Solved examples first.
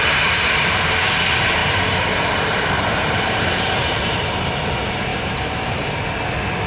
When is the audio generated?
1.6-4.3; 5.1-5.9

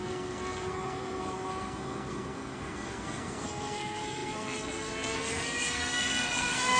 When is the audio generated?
0.0-6.8

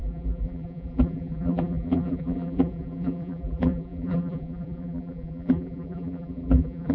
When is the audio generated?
0.0-6.9

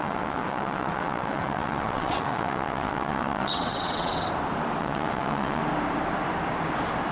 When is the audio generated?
0.0-4.1; 4.8-5.6

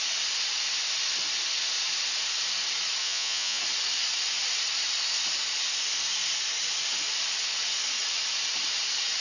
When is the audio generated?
3.0-3.6

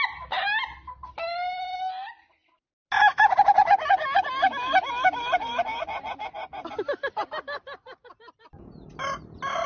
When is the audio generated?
none

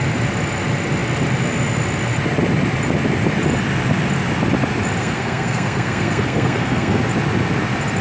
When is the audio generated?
5.0-7.0